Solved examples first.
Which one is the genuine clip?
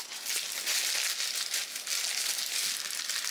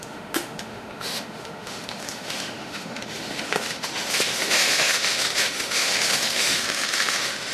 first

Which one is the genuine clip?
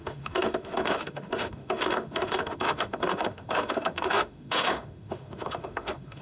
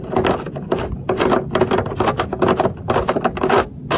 second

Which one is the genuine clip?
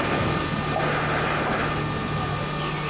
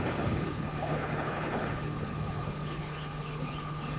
first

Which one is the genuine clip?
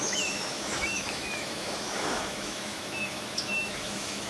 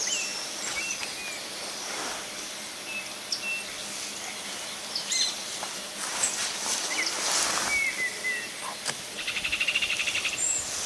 second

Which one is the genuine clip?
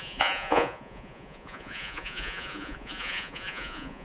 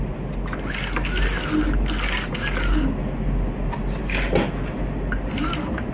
second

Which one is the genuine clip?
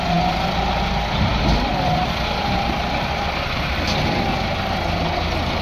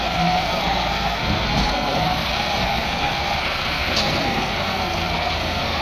first